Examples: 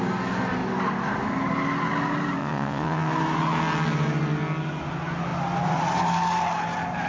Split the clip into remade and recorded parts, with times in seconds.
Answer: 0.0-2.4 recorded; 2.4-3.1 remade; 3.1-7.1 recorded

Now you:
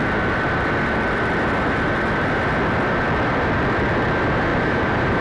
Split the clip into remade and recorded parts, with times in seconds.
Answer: 0.0-4.5 recorded; 4.5-5.2 remade

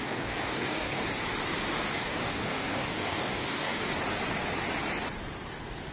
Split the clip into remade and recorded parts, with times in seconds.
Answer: 0.0-1.0 remade; 1.0-1.9 recorded; 1.9-3.9 remade; 3.9-5.9 recorded

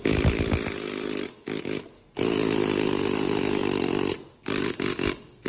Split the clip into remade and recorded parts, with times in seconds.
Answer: 0.0-5.5 recorded

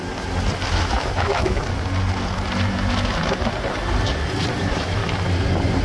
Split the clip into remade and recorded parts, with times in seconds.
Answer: 0.0-0.7 recorded; 0.7-1.6 remade; 1.6-4.6 recorded; 4.6-5.0 remade; 5.0-5.8 recorded

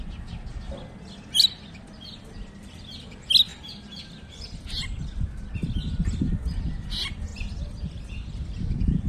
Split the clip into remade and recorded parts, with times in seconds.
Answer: 0.0-9.1 recorded